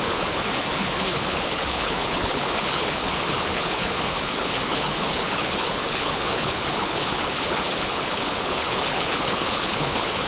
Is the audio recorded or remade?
remade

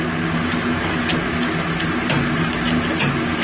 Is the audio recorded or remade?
recorded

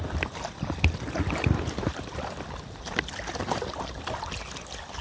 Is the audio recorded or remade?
recorded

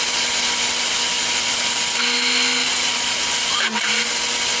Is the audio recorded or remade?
recorded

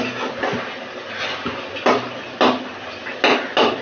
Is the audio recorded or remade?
recorded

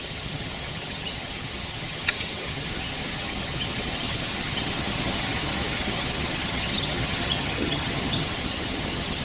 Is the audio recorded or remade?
remade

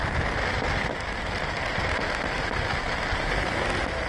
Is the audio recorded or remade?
recorded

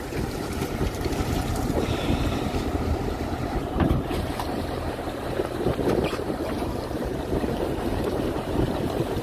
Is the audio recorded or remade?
remade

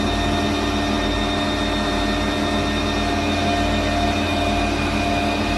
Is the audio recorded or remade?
recorded